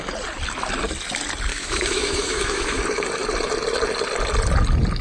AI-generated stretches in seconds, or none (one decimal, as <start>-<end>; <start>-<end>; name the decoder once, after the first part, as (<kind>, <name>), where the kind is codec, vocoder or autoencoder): 1.5-2.8 (autoencoder, DAC-VAE)